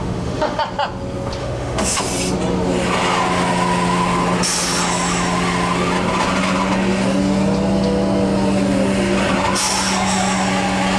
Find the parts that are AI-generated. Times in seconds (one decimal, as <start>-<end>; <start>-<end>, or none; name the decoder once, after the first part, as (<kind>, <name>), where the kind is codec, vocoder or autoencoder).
0.0-0.6 (autoencoder, DAC-VAE); 1.4-2.0